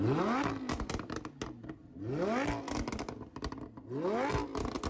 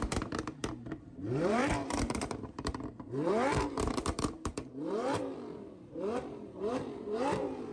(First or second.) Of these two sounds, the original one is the first